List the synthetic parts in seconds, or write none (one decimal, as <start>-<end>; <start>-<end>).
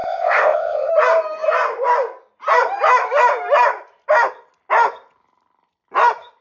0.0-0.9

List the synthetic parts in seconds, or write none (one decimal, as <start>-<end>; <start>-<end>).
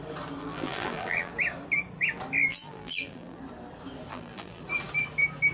0.4-1.3; 2.5-3.4; 4.1-4.6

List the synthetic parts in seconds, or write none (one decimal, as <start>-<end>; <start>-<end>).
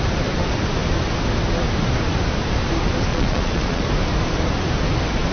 3.1-3.8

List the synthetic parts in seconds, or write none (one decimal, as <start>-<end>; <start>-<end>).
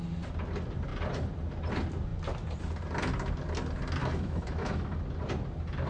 4.0-5.0